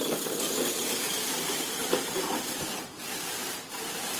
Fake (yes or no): yes